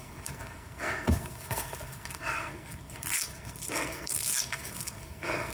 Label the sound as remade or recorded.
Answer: remade